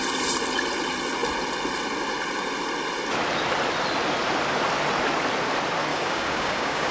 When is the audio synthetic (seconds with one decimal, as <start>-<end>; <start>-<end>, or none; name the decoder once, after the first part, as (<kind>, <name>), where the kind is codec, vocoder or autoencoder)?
5.9-6.9 (codec, DAC)